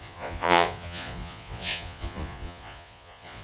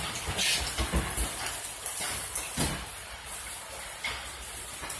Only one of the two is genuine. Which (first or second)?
second